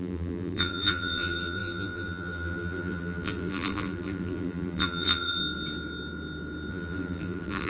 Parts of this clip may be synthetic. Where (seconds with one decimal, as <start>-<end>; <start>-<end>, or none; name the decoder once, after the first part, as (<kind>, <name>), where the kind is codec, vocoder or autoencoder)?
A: 0.0-5.4 (vocoder, BigVGAN v2); 6.7-7.7